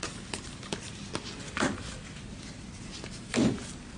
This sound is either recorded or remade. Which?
recorded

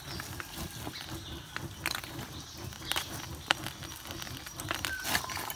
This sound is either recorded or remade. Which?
recorded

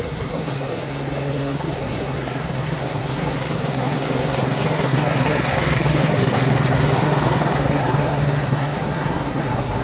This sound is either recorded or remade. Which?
remade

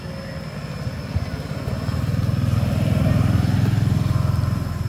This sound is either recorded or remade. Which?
recorded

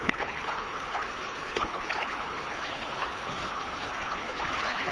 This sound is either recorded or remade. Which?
remade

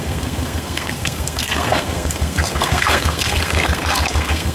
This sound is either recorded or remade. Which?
remade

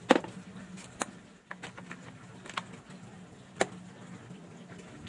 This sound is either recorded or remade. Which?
recorded